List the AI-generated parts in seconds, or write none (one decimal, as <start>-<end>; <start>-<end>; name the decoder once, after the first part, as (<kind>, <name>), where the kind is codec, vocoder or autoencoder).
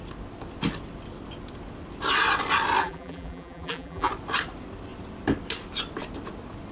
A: 2.8-4.1 (vocoder, BigVGAN v2)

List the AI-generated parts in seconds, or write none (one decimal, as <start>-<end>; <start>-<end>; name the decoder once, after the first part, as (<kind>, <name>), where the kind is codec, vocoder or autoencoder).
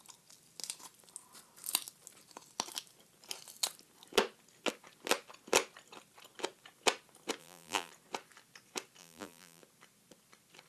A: 7.4-7.9 (vocoder, BigVGAN v2); 9.0-9.6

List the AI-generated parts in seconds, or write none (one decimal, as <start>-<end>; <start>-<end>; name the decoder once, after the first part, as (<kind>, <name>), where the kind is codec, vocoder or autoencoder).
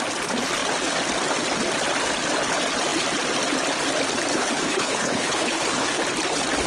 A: 4.3-6.0 (codec, HILCodec)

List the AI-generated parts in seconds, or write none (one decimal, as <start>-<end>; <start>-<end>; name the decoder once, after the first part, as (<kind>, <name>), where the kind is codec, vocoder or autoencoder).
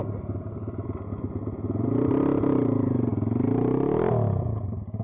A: none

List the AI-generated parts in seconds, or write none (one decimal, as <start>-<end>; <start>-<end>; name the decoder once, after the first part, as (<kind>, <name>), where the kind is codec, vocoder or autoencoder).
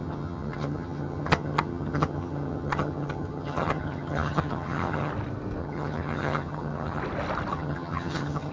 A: 0.0-5.1 (vocoder, HiFi-GAN); 5.6-7.0; 7.5-8.5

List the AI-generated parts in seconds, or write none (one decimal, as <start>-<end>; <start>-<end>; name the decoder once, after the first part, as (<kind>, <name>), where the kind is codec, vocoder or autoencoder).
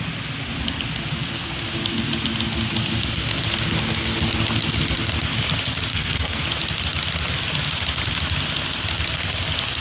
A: 5.9-6.4 (codec, SNAC)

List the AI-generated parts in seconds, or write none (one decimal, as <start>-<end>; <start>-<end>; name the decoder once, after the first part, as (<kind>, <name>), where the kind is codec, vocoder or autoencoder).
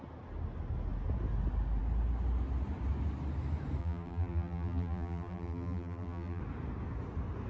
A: 3.8-6.4 (vocoder, BigVGAN v2)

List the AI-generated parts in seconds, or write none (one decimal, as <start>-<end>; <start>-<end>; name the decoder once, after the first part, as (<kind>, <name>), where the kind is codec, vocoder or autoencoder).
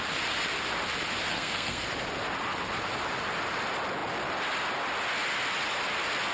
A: 1.3-1.9 (codec, SNAC)